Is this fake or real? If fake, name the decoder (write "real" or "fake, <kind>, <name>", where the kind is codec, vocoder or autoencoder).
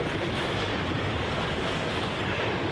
real